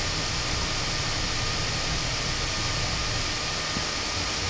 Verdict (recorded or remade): remade